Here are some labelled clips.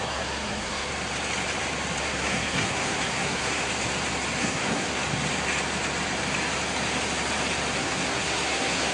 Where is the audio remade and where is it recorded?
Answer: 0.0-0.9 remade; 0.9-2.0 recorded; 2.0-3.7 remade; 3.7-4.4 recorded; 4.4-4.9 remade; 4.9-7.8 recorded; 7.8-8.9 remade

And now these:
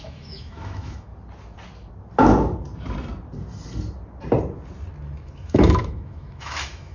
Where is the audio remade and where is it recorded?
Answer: 0.0-1.1 remade; 1.1-5.2 recorded; 5.2-6.9 remade

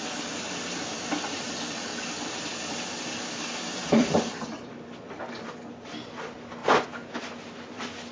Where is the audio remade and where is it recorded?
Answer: 0.0-1.9 remade; 1.9-2.7 recorded; 2.7-6.6 remade; 6.6-7.2 recorded; 7.2-8.1 remade

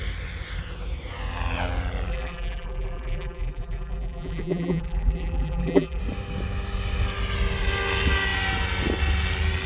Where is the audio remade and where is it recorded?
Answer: 0.0-2.1 recorded; 2.1-6.0 remade; 6.0-9.7 recorded